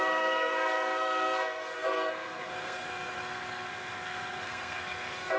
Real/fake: fake